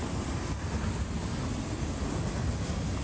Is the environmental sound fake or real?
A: real